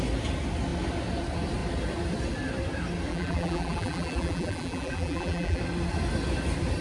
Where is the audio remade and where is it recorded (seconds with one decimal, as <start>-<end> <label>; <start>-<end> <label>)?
0.0-3.1 recorded; 3.1-5.6 remade; 5.6-6.8 recorded